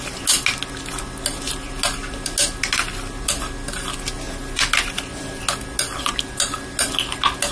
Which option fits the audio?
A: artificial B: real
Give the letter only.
B